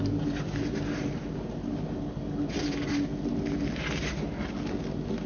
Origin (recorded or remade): recorded